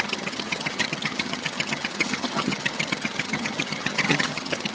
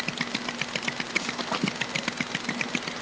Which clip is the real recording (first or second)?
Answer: second